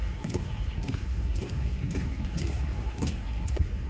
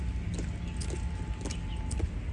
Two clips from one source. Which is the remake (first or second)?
first